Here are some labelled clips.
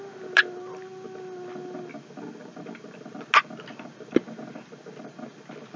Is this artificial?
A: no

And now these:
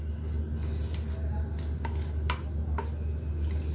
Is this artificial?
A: no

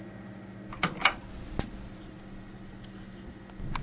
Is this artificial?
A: no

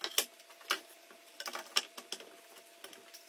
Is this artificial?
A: no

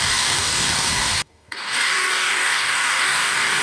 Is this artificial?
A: yes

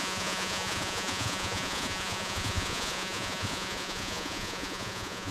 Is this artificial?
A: yes